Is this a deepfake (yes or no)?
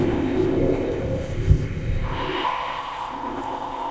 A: yes